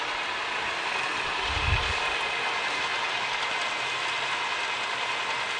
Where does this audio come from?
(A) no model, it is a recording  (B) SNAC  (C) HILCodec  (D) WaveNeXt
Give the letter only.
A